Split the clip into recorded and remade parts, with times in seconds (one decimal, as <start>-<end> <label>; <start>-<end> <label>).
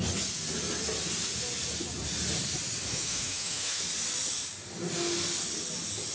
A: 0.0-2.9 recorded; 2.9-3.8 remade; 3.8-6.1 recorded